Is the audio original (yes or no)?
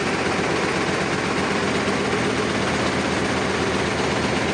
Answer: yes